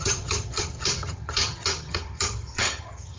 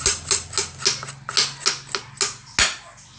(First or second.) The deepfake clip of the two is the first